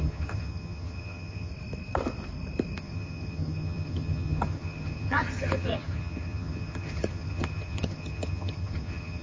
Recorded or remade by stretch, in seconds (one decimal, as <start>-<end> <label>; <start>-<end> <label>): 0.0-1.5 remade; 1.5-2.8 recorded; 2.8-9.2 remade